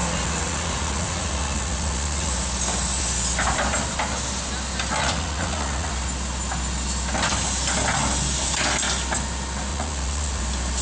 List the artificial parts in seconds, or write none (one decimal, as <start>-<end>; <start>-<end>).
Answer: 0.0-2.3; 5.0-5.9; 9.7-10.4